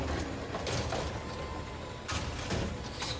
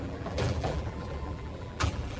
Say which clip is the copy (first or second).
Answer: second